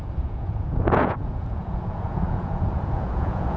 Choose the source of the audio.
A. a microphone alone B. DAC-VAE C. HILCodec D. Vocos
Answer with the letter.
D